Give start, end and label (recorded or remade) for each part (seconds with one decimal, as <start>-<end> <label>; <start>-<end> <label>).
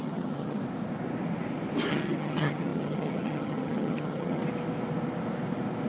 0.0-0.6 remade; 0.6-1.9 recorded; 1.9-4.4 remade; 4.4-5.9 recorded